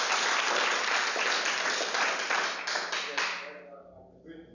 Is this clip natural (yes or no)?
yes